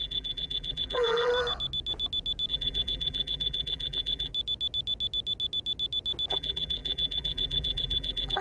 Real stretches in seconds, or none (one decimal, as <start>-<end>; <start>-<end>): 1.3-2.5; 4.3-6.3